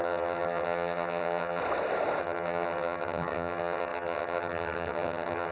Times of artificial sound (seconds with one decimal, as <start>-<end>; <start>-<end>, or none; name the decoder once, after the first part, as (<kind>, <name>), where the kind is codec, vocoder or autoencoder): 0.0-1.6 (vocoder, HiFi-GAN); 2.2-5.5